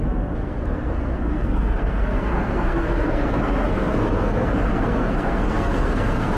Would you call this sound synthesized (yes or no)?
yes